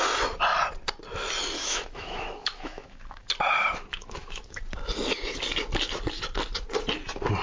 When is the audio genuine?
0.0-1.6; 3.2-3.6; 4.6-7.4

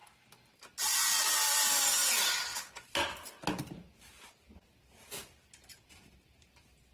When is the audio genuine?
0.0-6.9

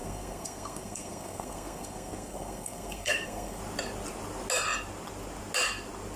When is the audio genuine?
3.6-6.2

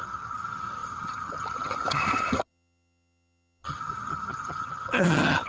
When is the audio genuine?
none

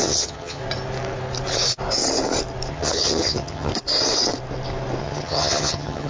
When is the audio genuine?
0.6-2.7; 3.7-5.0

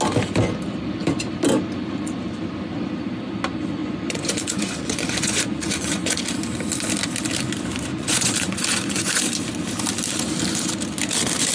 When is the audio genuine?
0.0-3.8; 6.2-7.9; 9.2-11.5

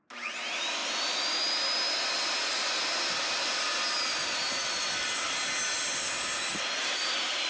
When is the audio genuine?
0.0-7.5